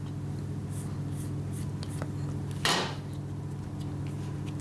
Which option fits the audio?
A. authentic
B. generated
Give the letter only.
A